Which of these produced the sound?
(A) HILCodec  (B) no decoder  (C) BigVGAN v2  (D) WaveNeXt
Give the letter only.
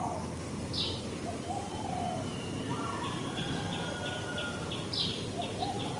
B